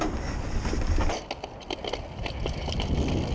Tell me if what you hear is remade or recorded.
recorded